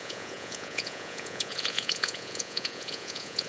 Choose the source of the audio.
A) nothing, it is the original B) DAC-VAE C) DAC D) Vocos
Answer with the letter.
D